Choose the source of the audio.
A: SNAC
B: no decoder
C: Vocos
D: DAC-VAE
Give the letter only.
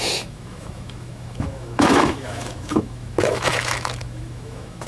D